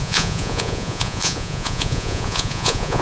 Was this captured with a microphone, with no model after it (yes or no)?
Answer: no